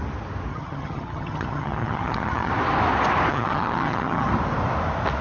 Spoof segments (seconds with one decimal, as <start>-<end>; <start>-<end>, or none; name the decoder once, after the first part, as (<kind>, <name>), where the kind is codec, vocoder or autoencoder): 0.5-2.5 (vocoder, HiFi-GAN); 3.3-4.3